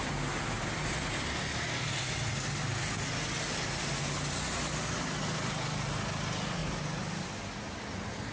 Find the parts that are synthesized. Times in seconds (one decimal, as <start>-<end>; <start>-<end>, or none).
none